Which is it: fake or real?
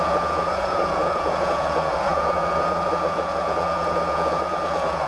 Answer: fake